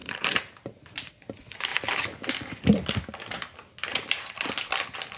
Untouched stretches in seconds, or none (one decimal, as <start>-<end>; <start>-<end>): 1.1-3.9; 4.6-5.2

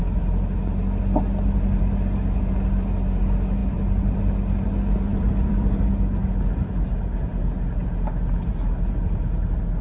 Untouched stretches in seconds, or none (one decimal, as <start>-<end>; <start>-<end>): 0.0-3.6; 4.2-5.1; 5.9-9.8

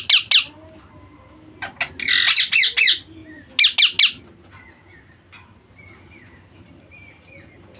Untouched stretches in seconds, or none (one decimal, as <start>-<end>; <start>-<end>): 0.0-7.8

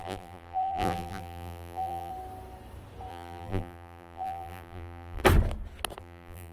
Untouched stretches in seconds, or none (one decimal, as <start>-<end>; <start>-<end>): 2.1-3.1; 5.2-6.0

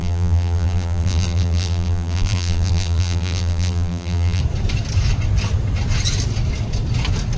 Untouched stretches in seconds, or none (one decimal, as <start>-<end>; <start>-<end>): 4.4-7.4